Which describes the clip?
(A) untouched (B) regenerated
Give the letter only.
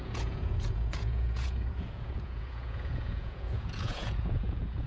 B